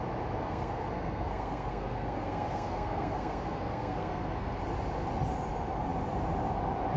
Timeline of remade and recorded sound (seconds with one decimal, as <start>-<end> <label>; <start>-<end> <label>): 0.0-0.4 recorded; 0.4-4.6 remade; 4.6-7.0 recorded